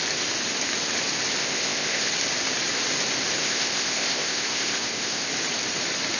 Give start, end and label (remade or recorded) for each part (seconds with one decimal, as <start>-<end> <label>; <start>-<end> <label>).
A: 0.0-1.4 recorded; 1.4-2.1 remade; 2.1-3.4 recorded; 3.4-5.3 remade; 5.3-6.2 recorded